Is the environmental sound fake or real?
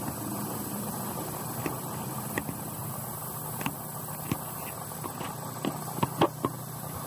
real